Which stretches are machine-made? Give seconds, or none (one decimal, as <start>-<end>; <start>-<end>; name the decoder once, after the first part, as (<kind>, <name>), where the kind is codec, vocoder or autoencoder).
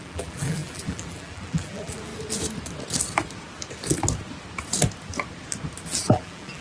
0.0-2.1 (vocoder, BigVGAN v2); 5.9-6.6